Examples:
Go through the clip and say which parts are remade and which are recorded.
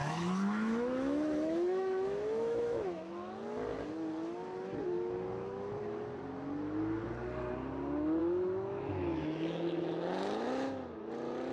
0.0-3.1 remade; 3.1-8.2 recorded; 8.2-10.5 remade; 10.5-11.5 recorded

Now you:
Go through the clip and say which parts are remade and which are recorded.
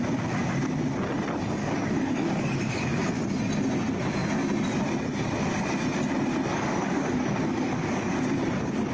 0.0-1.6 recorded; 1.6-3.1 remade; 3.1-6.5 recorded; 6.5-8.1 remade; 8.1-8.9 recorded